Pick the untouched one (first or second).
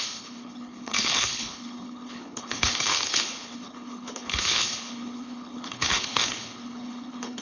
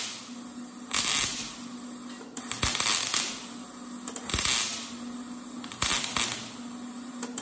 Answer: second